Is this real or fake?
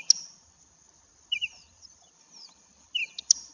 real